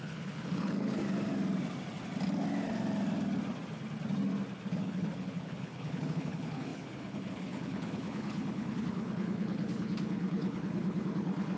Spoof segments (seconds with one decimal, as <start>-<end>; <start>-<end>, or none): 0.0-1.0; 4.8-11.6

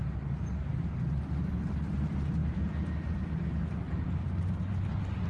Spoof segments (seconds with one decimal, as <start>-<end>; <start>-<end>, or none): none

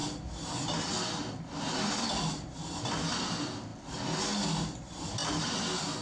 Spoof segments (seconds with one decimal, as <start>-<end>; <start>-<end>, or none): none

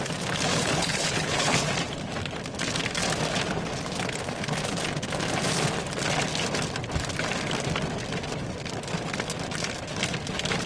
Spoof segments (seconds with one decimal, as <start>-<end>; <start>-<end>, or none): 0.5-1.7